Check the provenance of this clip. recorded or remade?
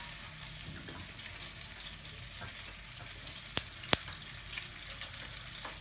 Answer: recorded